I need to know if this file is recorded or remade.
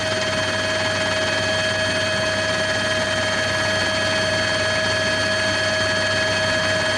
recorded